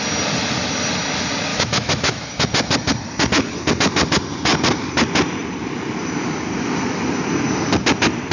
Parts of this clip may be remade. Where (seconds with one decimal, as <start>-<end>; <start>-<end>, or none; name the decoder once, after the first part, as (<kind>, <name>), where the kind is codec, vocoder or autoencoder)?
1.5-2.2 (autoencoder, DAC-VAE)

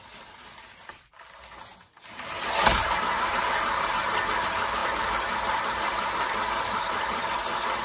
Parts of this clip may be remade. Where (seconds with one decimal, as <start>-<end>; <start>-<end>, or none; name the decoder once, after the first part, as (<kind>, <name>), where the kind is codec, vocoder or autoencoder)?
none

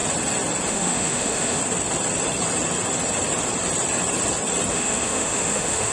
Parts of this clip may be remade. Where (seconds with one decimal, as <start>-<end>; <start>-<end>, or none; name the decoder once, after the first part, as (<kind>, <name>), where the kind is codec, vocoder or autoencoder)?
0.7-1.6 (autoencoder, DAC-VAE); 4.7-5.9

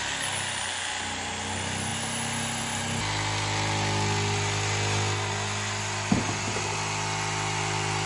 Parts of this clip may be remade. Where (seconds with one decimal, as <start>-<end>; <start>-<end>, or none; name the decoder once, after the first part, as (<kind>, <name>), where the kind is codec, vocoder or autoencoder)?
none

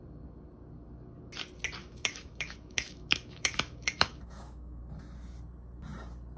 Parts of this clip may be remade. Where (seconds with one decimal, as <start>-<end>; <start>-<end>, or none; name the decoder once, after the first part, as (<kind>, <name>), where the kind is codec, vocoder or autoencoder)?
1.8-4.8 (autoencoder, DAC-VAE)